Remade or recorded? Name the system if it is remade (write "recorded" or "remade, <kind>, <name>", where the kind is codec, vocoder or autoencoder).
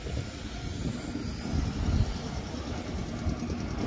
recorded